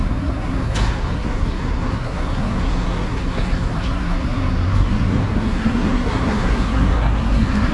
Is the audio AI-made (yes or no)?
yes